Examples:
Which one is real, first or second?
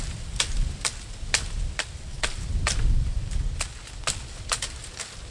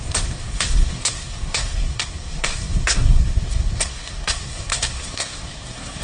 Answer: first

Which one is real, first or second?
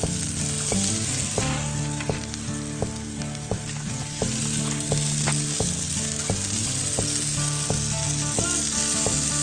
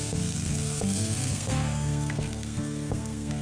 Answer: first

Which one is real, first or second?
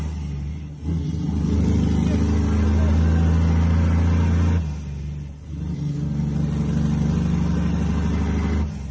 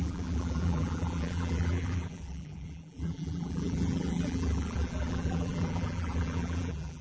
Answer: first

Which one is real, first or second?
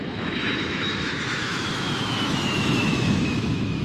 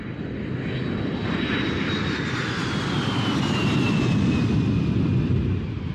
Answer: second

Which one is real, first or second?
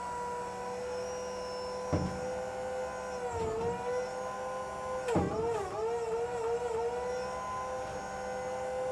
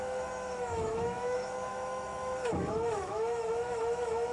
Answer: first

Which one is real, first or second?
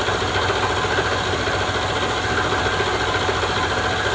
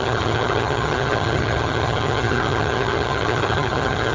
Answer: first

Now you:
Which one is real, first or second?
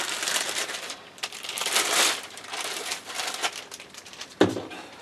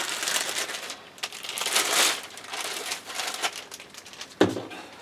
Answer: second